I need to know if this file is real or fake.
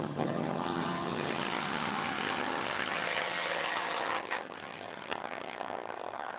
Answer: fake